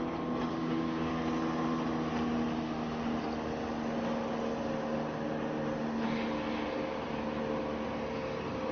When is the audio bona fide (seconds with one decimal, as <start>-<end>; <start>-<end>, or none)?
0.0-0.5; 1.1-8.7